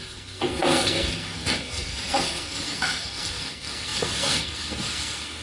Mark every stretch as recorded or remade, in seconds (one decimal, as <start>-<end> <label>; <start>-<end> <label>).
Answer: 0.0-5.4 remade